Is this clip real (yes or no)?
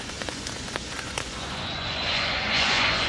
no